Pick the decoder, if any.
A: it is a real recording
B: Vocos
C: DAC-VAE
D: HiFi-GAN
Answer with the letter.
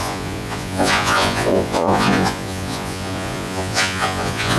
B